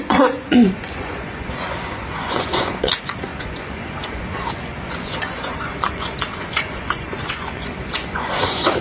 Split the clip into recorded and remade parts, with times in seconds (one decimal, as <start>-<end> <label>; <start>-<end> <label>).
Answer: 0.0-8.8 remade